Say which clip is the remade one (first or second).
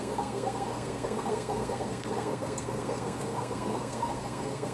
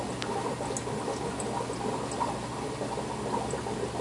first